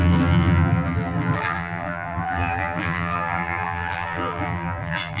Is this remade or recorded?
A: remade